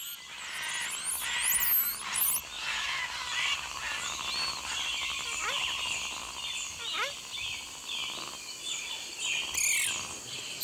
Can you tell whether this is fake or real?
real